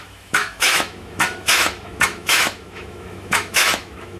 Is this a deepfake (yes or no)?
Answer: yes